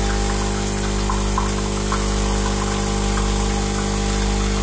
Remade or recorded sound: recorded